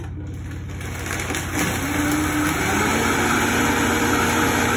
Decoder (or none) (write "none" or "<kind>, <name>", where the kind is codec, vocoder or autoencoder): none